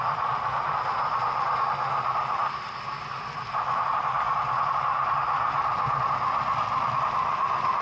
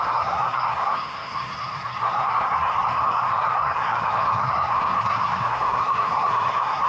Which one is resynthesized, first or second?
second